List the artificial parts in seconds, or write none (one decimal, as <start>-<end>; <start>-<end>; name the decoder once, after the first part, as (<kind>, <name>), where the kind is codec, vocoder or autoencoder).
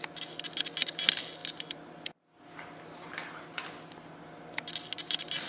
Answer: none